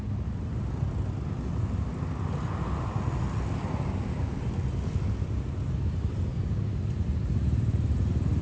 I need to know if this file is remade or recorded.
recorded